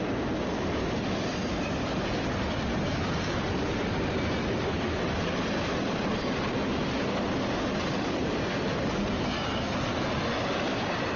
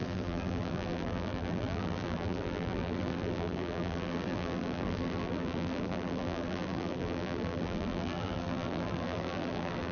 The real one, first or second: first